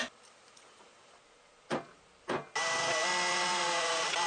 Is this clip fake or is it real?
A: real